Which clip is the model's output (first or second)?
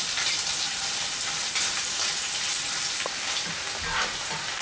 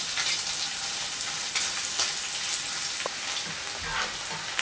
first